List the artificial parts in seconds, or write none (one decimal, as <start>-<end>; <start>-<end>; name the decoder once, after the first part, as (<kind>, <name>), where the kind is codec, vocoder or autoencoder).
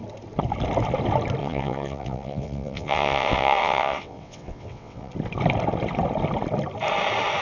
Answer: 1.4-5.1 (vocoder, WaveNeXt)